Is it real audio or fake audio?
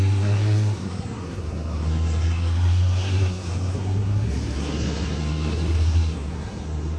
fake